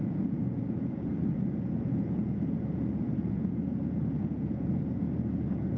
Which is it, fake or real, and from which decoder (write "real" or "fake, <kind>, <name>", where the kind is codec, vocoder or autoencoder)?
fake, vocoder, Vocos